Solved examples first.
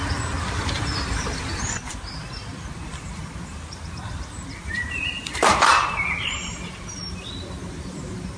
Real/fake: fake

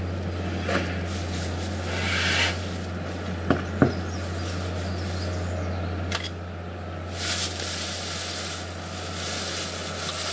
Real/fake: real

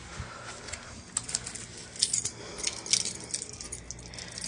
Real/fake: real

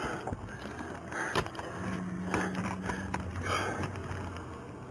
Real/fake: real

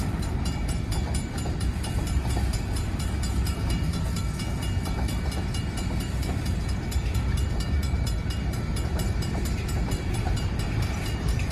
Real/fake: fake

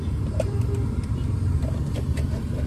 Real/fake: fake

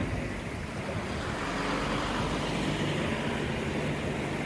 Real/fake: real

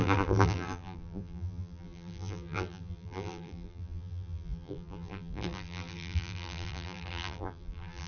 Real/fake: fake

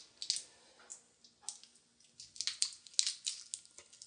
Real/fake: real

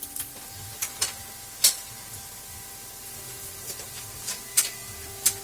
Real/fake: fake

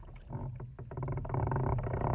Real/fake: real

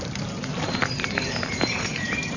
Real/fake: fake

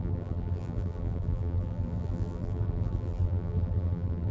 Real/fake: fake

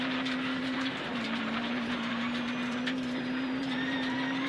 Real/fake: fake